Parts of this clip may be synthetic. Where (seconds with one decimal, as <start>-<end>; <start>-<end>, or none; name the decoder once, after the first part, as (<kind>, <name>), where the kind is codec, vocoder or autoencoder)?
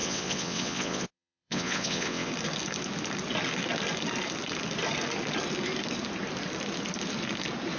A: 0.0-2.3 (vocoder, WaveNeXt)